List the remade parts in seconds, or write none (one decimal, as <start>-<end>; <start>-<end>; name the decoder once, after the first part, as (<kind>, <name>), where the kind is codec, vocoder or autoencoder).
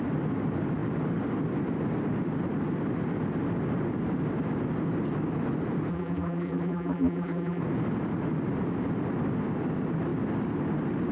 5.9-7.6 (vocoder, BigVGAN v2)